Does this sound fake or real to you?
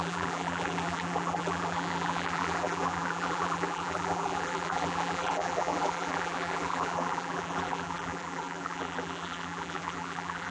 fake